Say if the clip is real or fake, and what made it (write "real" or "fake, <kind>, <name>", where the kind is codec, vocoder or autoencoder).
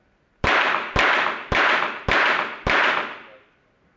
fake, vocoder, BigVGAN v2